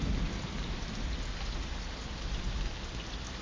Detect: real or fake real